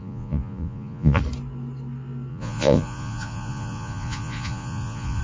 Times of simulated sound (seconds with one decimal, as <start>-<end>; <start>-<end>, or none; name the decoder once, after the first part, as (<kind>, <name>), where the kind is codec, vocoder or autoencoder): 0.0-1.2 (vocoder, Vocos); 2.3-5.2